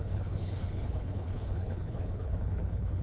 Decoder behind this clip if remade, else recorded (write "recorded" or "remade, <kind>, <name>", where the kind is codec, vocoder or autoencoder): remade, codec, HILCodec